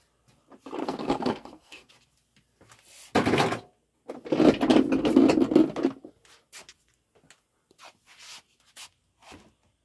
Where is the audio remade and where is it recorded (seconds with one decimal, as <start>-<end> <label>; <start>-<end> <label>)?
0.0-0.8 recorded; 0.8-1.9 remade; 1.9-9.8 recorded